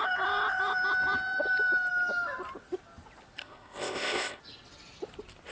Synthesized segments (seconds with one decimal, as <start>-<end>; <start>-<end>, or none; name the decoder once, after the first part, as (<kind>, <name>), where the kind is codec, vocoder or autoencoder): 3.4-4.4 (codec, ZipCodec)